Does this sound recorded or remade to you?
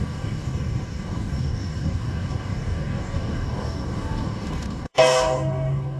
remade